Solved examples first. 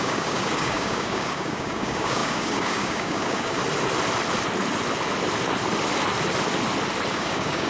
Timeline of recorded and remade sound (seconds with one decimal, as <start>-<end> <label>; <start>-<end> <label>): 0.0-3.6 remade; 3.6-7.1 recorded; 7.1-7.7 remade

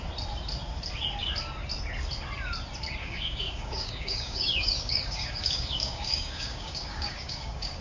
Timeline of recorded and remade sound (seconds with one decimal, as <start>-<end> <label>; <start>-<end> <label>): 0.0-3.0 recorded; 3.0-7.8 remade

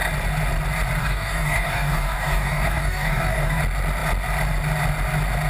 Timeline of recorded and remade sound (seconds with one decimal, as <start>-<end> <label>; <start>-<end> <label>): 0.0-1.0 recorded; 1.0-3.6 remade; 3.6-5.5 recorded